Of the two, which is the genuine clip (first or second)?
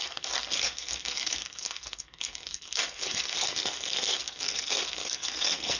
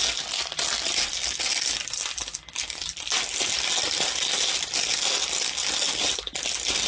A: second